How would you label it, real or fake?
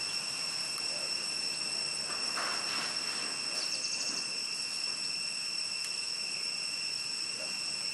real